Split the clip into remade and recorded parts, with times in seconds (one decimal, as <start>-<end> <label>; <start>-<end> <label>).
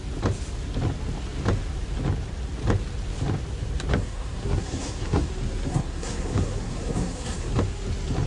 0.0-3.9 recorded; 3.9-5.3 remade; 5.3-5.7 recorded; 5.7-7.5 remade; 7.5-8.3 recorded